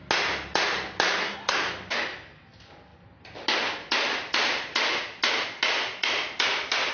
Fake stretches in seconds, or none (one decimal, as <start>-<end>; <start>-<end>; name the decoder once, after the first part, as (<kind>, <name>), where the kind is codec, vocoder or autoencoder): 1.2-1.7 (codec, SNAC)